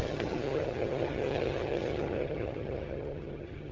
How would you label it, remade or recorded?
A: remade